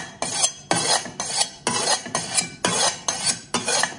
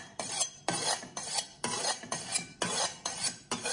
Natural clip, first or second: first